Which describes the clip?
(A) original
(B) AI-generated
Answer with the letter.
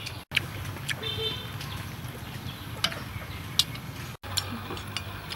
A